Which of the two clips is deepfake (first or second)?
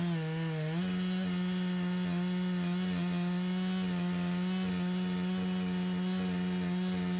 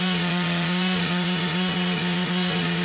second